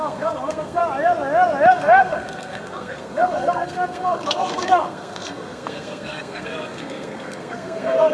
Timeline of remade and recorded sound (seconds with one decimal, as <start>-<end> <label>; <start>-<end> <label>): 0.0-0.8 remade; 0.8-1.7 recorded; 1.7-8.1 remade